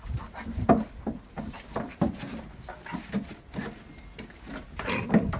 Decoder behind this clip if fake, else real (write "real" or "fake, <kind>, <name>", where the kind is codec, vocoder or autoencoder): real